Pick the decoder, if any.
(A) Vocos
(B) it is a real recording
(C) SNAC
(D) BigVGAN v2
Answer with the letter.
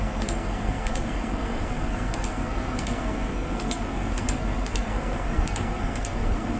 C